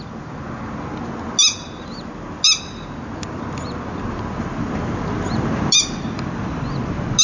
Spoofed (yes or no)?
no